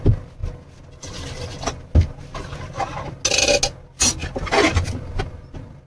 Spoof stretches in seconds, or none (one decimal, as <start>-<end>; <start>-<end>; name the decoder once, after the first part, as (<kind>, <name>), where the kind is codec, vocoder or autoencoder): none